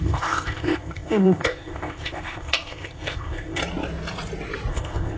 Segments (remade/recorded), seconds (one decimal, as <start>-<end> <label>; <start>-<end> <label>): 0.0-3.6 remade; 3.6-4.7 recorded; 4.7-5.2 remade